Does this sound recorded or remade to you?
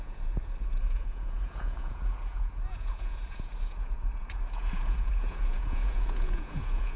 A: remade